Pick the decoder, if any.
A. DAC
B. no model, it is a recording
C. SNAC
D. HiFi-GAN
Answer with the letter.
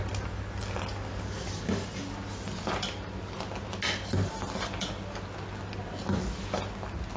B